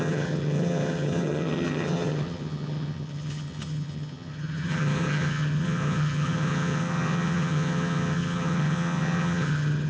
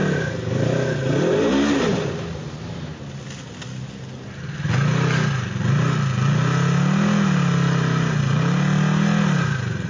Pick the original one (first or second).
second